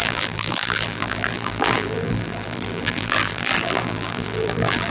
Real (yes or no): no